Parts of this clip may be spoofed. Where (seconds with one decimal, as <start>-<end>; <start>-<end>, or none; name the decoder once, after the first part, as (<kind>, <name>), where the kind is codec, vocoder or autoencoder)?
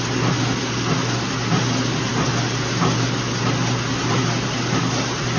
none